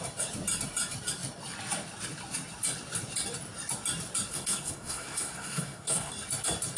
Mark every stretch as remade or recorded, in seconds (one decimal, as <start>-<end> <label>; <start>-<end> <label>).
0.0-4.3 recorded; 4.3-6.1 remade; 6.1-6.8 recorded